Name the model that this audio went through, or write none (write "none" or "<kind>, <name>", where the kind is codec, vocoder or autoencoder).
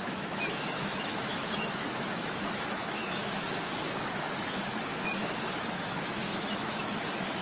autoencoder, DAC-VAE